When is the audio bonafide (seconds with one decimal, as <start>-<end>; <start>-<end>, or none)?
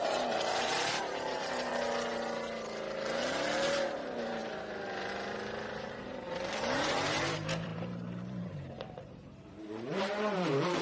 1.7-3.3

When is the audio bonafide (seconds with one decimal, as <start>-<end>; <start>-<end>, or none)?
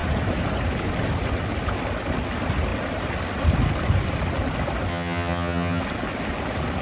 0.0-4.9; 5.8-6.8